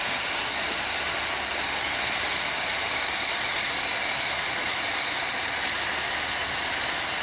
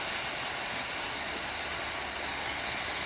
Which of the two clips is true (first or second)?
second